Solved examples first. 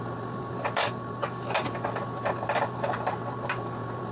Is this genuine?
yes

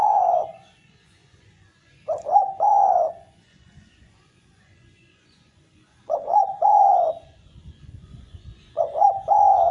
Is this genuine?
no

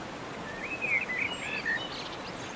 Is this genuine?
yes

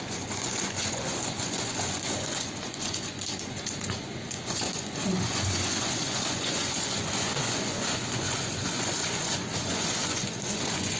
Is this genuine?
no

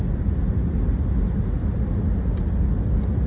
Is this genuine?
yes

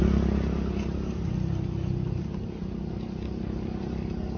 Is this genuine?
yes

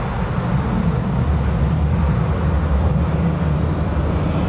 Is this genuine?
yes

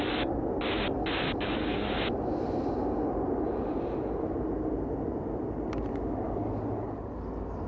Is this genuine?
yes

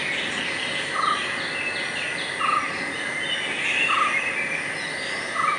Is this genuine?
yes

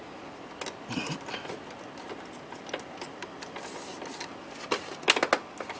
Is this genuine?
yes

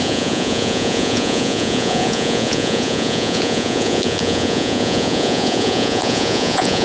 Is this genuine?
no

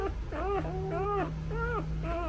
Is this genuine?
yes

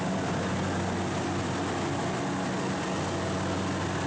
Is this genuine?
yes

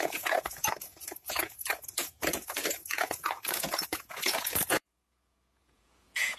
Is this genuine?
no